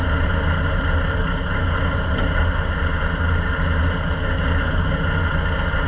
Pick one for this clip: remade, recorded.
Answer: recorded